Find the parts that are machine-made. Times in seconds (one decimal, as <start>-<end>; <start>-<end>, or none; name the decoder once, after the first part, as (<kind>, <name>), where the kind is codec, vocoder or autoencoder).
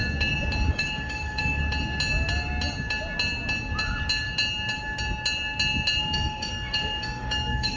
0.7-1.6 (codec, DAC); 6.0-7.8